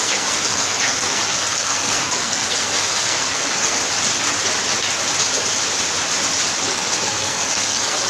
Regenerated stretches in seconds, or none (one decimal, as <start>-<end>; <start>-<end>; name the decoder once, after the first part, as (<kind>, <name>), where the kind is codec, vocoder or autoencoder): 0.0-3.8 (codec, SNAC); 6.6-8.1

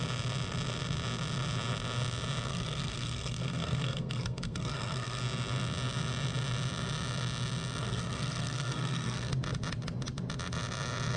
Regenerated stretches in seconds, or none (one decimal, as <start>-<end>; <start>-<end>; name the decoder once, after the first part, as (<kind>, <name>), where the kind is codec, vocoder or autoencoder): 2.5-5.2 (codec, SNAC); 7.8-9.3

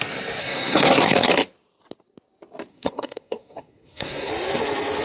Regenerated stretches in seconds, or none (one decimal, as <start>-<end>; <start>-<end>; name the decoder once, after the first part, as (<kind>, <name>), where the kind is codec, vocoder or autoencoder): 0.4-1.3 (codec, SNAC); 2.7-4.3

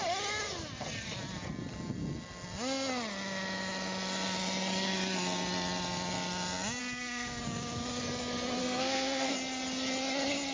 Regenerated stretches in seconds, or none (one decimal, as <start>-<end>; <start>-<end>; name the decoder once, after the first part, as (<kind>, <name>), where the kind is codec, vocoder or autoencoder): 6.8-7.4 (codec, SNAC); 8.6-9.3

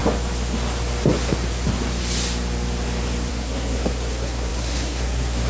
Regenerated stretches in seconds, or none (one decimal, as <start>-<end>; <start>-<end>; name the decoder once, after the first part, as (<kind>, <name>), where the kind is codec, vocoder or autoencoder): 3.3-5.5 (codec, SNAC)

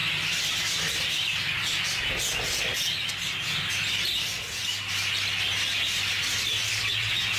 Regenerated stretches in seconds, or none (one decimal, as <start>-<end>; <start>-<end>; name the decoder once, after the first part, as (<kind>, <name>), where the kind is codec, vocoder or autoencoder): none

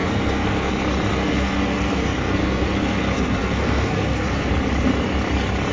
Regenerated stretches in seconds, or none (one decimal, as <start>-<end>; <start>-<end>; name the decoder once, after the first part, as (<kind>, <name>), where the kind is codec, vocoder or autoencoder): 0.0-0.7 (codec, SNAC); 1.1-4.5

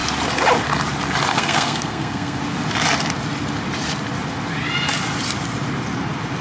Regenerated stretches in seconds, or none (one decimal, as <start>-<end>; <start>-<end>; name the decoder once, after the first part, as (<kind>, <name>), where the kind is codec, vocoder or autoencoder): 1.3-2.4 (codec, SNAC)